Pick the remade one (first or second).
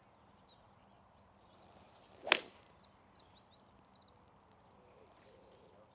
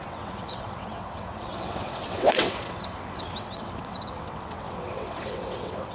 second